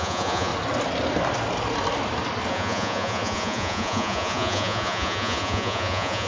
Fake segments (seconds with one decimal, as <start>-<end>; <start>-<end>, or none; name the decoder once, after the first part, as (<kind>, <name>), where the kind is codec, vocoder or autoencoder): 0.0-0.5 (vocoder, Vocos); 2.5-6.3